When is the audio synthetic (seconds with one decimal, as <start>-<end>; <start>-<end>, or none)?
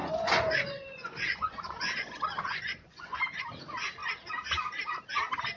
0.0-3.4